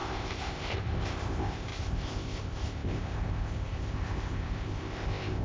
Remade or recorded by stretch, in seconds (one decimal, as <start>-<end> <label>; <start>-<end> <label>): 0.0-5.4 remade